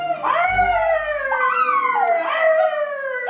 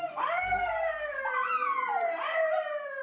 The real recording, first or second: first